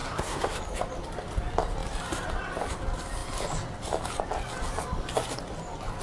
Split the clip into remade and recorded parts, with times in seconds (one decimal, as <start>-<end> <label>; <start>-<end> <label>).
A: 0.0-0.6 remade; 0.6-6.0 recorded